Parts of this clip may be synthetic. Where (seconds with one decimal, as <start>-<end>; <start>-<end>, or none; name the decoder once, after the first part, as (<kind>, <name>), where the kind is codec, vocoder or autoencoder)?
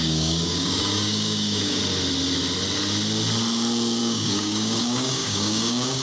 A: 0.0-1.8 (codec, DAC); 4.0-6.0